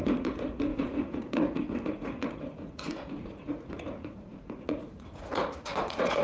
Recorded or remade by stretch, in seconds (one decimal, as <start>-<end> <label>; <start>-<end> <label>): 0.0-6.2 remade